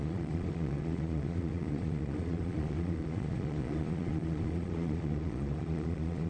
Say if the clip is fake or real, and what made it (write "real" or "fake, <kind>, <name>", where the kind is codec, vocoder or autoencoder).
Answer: fake, vocoder, Vocos